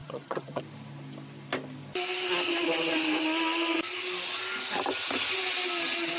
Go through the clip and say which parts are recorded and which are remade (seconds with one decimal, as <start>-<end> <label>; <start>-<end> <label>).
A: 0.0-0.6 remade; 0.6-6.2 recorded